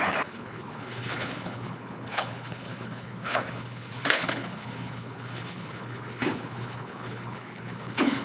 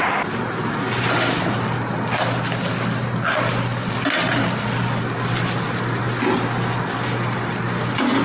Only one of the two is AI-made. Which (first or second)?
first